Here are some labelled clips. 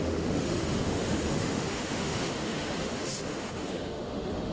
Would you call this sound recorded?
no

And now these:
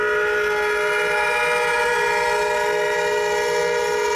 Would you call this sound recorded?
yes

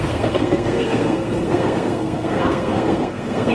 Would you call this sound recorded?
no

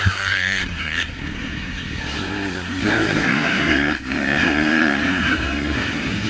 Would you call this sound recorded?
no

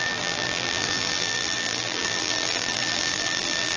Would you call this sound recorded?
no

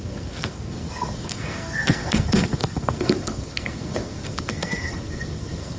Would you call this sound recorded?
no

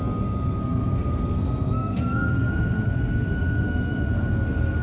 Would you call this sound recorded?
no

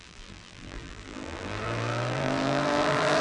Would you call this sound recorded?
no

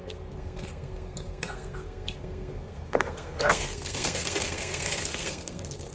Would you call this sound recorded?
no